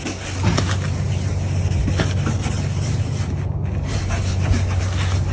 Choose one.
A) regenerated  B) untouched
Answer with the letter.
B